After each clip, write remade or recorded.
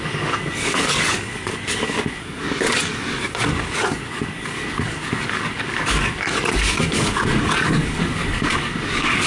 remade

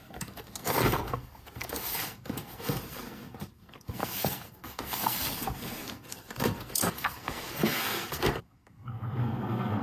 remade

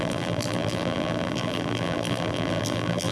remade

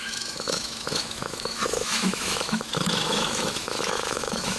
remade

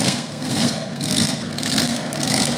remade